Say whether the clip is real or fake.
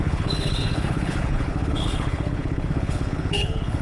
fake